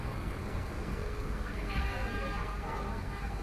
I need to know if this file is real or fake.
fake